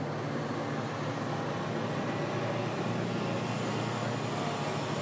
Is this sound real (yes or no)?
yes